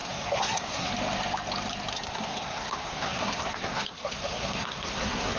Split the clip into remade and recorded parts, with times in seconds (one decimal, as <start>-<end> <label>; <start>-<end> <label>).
0.0-0.9 remade; 0.9-1.9 recorded; 1.9-5.4 remade